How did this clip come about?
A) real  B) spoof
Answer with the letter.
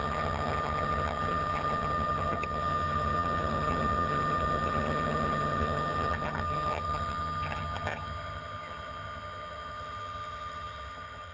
B